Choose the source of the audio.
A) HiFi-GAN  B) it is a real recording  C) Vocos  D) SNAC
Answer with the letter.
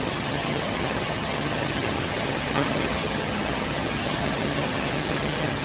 A